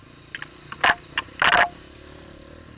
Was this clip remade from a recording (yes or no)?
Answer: no